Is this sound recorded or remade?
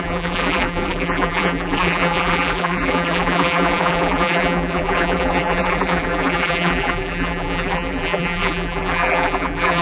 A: remade